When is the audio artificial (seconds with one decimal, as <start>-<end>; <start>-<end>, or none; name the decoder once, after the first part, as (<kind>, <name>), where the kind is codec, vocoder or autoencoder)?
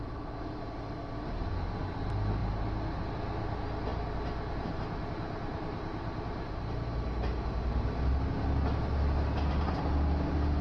none